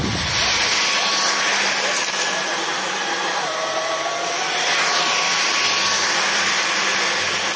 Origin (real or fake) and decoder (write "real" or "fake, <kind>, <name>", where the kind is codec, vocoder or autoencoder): real